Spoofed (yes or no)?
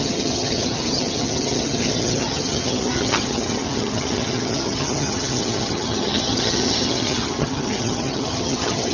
yes